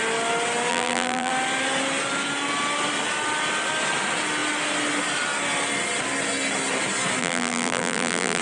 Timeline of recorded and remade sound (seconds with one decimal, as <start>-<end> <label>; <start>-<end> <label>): 0.0-0.7 recorded; 0.7-1.3 remade; 1.3-7.2 recorded; 7.2-8.4 remade